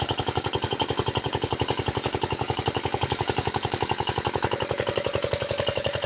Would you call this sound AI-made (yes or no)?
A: yes